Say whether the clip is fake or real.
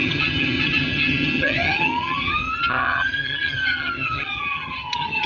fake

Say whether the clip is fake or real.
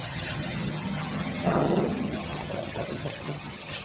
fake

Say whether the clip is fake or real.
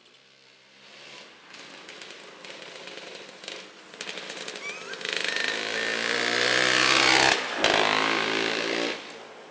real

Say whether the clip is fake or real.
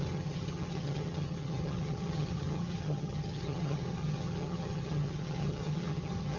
fake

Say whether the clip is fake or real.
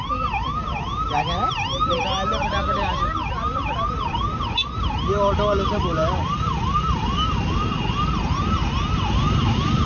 real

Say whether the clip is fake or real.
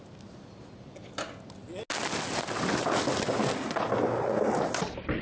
real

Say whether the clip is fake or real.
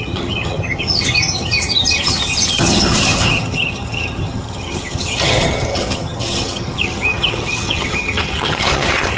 fake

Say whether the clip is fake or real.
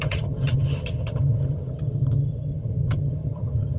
fake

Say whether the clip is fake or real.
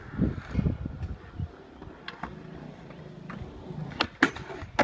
real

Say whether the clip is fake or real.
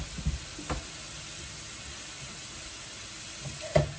real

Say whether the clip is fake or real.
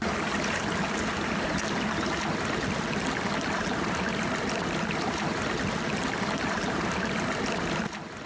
real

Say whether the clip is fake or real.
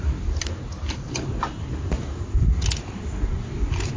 real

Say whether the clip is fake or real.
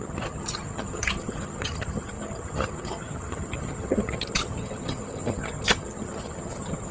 fake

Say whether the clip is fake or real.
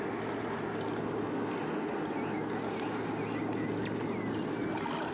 real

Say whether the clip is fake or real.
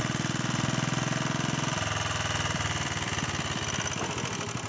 real